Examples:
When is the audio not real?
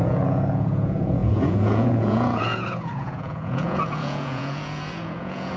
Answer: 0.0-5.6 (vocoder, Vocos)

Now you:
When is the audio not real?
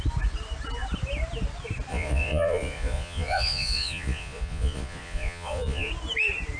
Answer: 1.9-5.9 (vocoder, Vocos)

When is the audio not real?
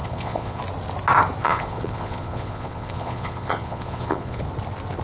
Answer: 0.0-0.6 (vocoder, Vocos); 1.4-4.4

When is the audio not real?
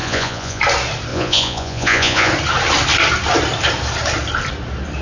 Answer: 0.0-0.6 (vocoder, Vocos); 1.1-2.3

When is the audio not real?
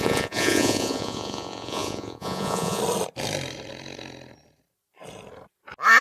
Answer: 0.0-2.8 (vocoder, Vocos)